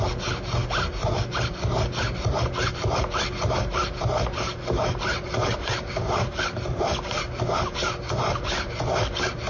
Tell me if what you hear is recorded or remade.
recorded